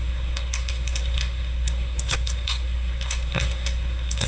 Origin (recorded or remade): remade